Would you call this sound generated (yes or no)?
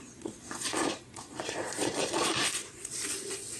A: yes